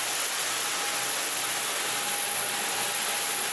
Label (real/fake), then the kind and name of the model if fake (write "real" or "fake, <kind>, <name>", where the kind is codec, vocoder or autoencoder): real